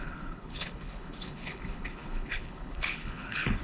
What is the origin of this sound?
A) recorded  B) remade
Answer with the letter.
B